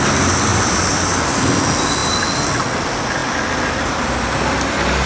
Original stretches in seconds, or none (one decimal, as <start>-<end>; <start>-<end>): 0.0-0.5; 1.0-5.1